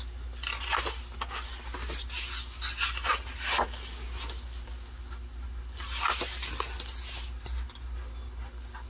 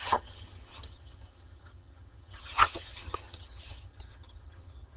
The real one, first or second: first